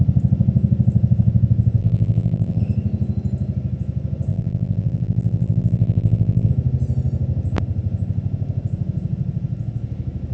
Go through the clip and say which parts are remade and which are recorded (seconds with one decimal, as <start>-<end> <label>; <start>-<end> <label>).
0.0-1.8 recorded; 1.8-2.6 remade; 2.6-4.3 recorded; 4.3-6.5 remade; 6.5-10.3 recorded

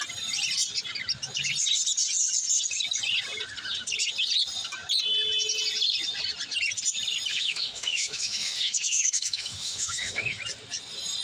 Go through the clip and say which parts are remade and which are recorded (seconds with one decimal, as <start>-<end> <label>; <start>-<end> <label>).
0.0-7.3 recorded; 7.3-10.4 remade; 10.4-11.2 recorded

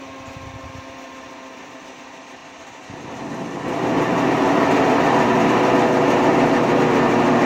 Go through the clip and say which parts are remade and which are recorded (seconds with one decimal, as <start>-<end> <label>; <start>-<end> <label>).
0.0-7.5 recorded

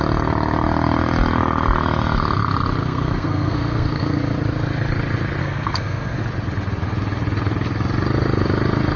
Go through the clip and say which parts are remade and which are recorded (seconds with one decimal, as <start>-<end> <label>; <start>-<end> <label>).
0.0-2.8 recorded; 2.8-4.2 remade; 4.2-5.4 recorded; 5.4-6.2 remade; 6.2-9.0 recorded

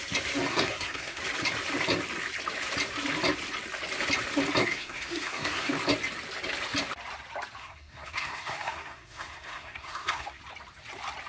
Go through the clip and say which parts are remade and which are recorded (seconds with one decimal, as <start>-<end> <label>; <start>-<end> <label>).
0.0-0.5 recorded; 0.5-1.2 remade; 1.2-4.6 recorded; 4.6-5.7 remade; 5.7-7.6 recorded; 7.6-10.4 remade; 10.4-11.3 recorded

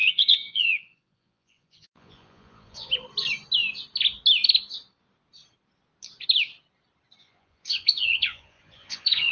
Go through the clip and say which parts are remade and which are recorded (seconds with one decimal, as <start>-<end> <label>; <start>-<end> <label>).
0.0-2.9 remade; 2.9-7.2 recorded; 7.2-9.3 remade

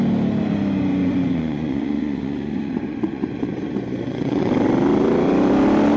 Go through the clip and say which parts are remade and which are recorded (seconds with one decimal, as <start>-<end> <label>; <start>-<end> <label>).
0.0-1.0 recorded; 1.0-4.5 remade; 4.5-6.0 recorded

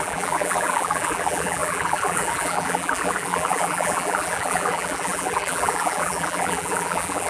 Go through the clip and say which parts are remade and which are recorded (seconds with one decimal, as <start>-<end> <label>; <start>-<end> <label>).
0.0-7.3 remade